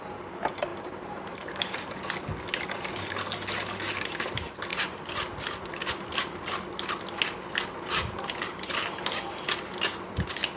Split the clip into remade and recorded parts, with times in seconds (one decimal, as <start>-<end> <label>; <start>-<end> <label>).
0.0-0.7 recorded; 0.7-2.0 remade; 2.0-10.6 recorded